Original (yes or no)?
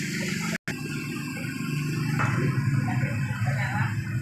yes